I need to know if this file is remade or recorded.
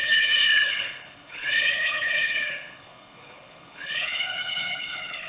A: remade